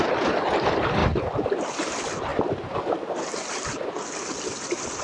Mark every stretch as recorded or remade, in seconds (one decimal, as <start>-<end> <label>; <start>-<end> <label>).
0.0-5.0 recorded